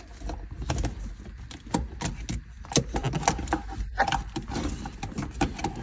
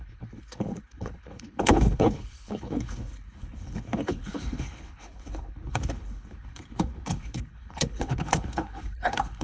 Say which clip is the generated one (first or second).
second